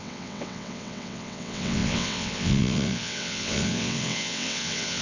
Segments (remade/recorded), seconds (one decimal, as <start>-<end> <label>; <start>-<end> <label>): 0.0-5.0 remade